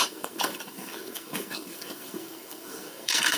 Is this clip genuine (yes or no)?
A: no